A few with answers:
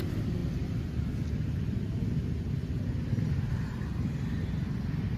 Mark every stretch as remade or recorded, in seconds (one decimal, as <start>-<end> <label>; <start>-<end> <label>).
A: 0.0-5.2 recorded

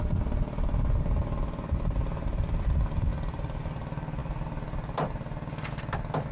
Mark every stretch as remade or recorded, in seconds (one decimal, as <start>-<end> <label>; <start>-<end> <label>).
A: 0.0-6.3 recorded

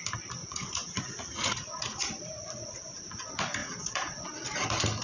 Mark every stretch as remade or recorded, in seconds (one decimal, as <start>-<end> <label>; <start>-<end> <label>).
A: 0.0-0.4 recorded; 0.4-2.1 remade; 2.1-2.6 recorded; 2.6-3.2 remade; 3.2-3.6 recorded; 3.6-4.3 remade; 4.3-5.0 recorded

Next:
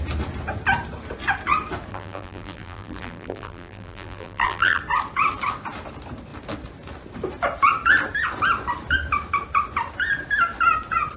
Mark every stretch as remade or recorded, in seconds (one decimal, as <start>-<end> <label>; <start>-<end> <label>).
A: 0.0-1.9 recorded; 1.9-4.8 remade; 4.8-11.2 recorded